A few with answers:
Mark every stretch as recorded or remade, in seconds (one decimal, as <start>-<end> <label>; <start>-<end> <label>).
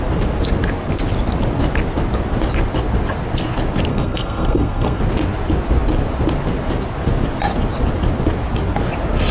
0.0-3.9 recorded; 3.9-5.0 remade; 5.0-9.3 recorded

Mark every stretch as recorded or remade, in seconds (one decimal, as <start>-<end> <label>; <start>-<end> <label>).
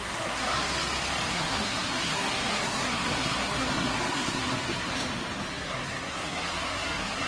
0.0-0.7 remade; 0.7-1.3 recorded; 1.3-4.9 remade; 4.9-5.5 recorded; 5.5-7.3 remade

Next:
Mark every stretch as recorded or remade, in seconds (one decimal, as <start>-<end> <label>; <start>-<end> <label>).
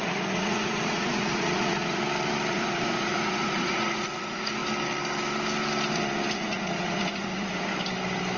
0.0-2.0 remade; 2.0-2.5 recorded; 2.5-4.6 remade; 4.6-6.3 recorded; 6.3-7.7 remade; 7.7-8.4 recorded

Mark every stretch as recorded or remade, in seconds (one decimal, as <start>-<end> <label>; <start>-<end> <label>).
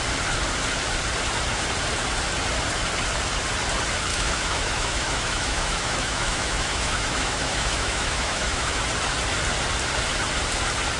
0.0-4.1 recorded; 4.1-8.8 remade; 8.8-11.0 recorded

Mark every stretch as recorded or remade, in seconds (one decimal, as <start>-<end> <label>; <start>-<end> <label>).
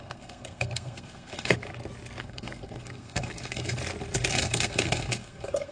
0.0-1.6 remade; 1.6-2.2 recorded; 2.2-3.8 remade; 3.8-4.3 recorded; 4.3-5.7 remade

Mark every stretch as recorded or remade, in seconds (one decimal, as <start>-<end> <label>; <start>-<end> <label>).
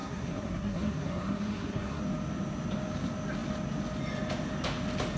0.0-2.0 remade; 2.0-5.2 recorded